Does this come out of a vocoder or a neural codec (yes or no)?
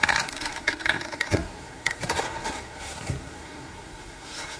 yes